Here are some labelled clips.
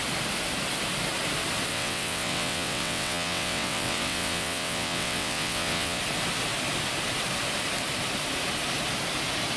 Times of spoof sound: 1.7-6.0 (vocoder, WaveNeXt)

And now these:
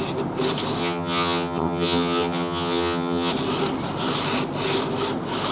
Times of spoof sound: 0.8-3.3 (vocoder, HiFi-GAN)